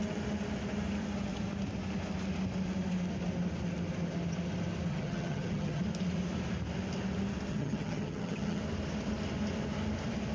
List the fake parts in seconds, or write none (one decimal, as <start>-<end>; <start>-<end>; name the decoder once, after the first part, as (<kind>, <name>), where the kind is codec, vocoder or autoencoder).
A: 4.9-5.8 (vocoder, HiFi-GAN); 7.5-8.6